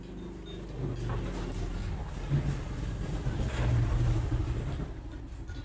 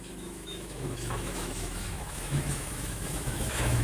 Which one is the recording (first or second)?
first